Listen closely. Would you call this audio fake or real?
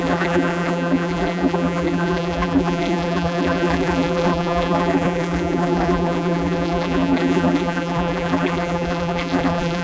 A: fake